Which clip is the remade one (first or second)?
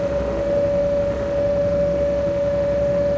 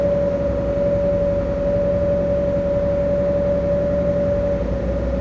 first